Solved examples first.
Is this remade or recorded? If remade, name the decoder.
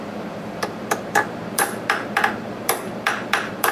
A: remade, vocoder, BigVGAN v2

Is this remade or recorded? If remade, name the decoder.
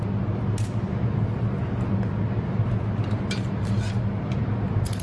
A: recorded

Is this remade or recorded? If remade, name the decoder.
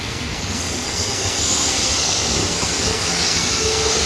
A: remade, codec, SNAC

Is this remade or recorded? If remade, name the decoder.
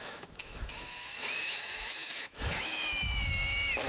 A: remade, autoencoder, DAC-VAE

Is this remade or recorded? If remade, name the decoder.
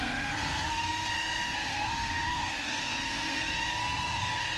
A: remade, codec, SNAC